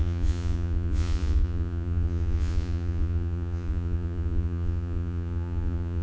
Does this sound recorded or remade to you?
remade